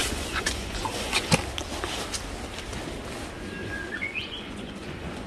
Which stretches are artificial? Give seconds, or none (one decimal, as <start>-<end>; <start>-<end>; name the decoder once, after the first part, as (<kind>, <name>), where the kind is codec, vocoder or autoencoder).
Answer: 0.0-1.3 (vocoder, Vocos); 3.6-5.3